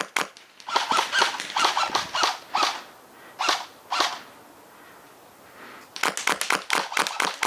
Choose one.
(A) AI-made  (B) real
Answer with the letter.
B